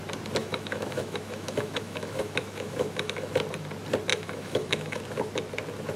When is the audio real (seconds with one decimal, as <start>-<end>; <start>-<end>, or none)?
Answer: 0.0-0.4; 3.3-4.1; 5.0-6.0